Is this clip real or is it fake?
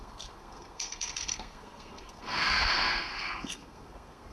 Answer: fake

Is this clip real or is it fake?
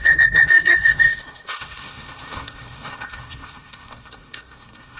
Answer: fake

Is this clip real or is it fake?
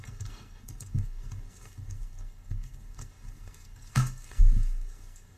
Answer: fake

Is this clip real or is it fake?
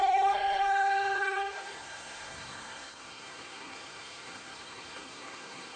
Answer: fake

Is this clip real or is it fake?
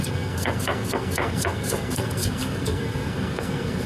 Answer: fake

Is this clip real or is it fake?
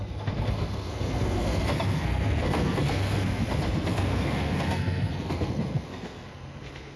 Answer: fake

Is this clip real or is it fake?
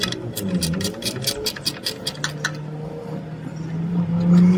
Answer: real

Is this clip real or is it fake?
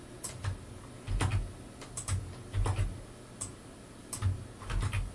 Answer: real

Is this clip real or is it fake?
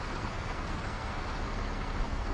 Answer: fake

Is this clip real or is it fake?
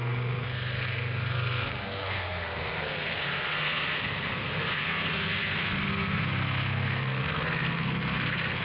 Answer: fake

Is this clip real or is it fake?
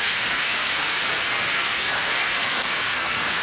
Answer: fake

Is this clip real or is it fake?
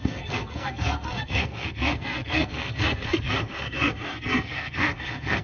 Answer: fake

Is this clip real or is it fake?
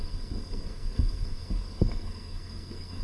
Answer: fake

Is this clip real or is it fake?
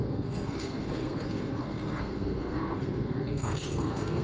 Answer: fake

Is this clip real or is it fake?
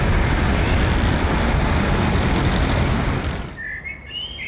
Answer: real